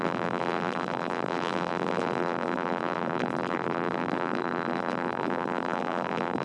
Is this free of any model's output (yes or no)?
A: no